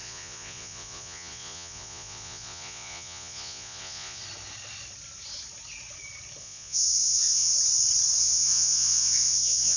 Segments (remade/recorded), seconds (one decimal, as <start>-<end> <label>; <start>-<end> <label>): 0.0-4.2 remade; 4.2-6.4 recorded; 6.4-7.5 remade; 7.5-8.2 recorded; 8.2-9.8 remade